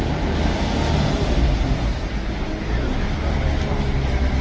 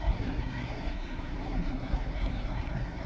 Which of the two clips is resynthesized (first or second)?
second